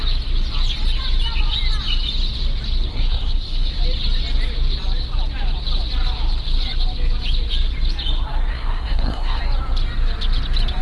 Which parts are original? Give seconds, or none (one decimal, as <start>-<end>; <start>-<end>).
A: 0.0-2.9; 3.8-8.5; 9.4-10.8